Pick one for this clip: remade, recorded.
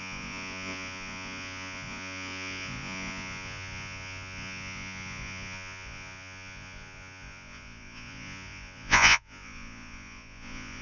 remade